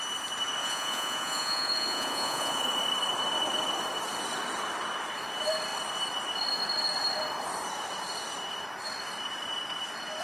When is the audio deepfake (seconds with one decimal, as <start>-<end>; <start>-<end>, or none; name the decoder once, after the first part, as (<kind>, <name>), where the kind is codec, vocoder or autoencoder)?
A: 0.6-2.6 (vocoder, Vocos)